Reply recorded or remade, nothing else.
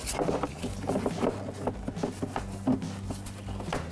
recorded